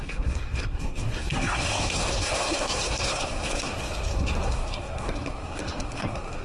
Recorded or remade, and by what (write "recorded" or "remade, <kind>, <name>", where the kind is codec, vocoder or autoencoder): remade, codec, SNAC